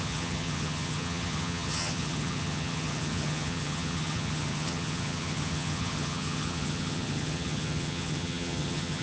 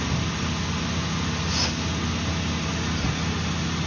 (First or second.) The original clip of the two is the second